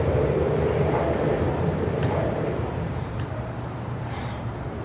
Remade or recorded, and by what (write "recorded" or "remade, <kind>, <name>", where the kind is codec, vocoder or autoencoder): remade, vocoder, BigVGAN v2